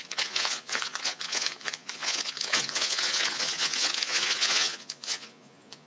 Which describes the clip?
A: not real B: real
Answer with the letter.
A